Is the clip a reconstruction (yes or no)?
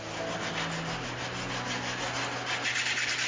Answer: no